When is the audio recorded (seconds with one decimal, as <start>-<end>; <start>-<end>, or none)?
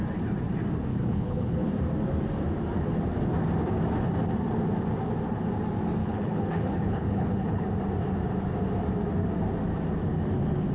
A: 0.0-0.9; 1.7-6.0; 7.7-10.7